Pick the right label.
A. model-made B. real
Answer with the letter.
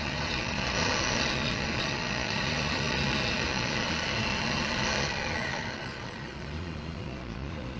A